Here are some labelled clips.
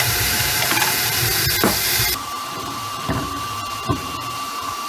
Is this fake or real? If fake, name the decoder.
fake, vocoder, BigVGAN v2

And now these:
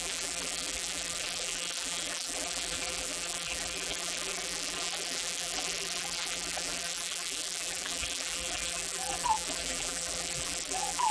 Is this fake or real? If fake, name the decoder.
fake, vocoder, BigVGAN v2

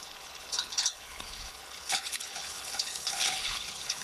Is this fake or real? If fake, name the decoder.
fake, codec, HILCodec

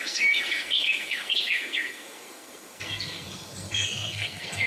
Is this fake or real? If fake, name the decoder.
fake, codec, SNAC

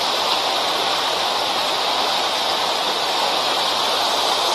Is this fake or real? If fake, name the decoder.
real